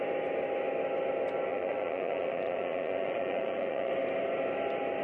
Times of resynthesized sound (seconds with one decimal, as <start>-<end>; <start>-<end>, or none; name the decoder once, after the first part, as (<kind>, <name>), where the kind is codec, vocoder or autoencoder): 1.5-3.9 (vocoder, Vocos)